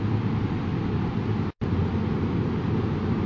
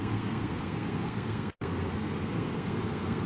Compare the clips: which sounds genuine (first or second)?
first